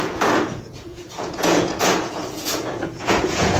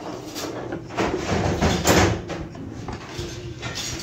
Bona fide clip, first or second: second